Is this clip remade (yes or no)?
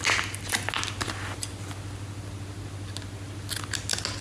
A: no